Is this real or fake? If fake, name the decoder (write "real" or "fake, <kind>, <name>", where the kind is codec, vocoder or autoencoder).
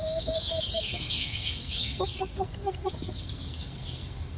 fake, codec, SNAC